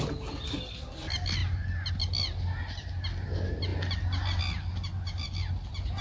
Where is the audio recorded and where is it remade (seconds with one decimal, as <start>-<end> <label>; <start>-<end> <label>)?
0.0-6.0 recorded